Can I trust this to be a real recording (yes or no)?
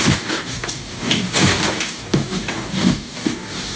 no